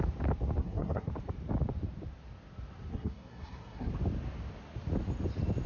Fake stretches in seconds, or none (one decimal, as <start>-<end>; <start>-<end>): 0.6-1.1; 2.9-3.9